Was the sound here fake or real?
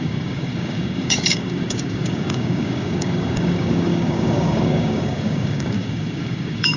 fake